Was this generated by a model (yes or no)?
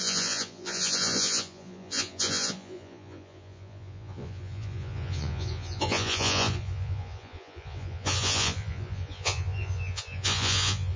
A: yes